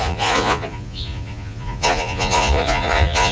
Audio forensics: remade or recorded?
remade